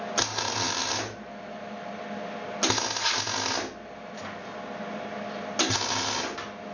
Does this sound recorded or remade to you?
recorded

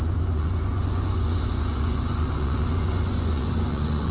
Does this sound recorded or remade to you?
remade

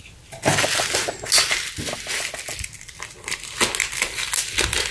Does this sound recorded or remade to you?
recorded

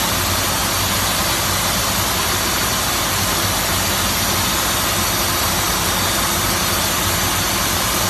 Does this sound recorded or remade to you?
recorded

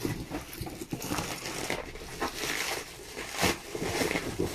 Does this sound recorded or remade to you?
remade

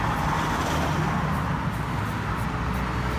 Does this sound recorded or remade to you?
recorded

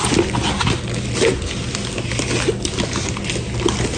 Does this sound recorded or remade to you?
recorded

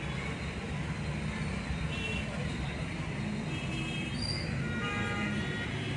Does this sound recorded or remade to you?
recorded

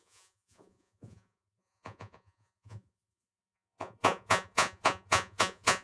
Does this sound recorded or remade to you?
remade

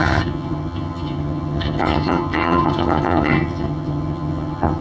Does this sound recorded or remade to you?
remade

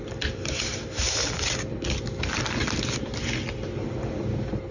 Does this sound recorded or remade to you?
recorded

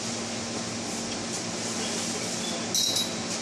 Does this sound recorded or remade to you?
recorded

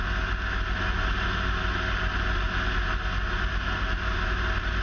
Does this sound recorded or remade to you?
recorded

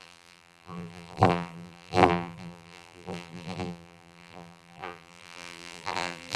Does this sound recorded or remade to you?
remade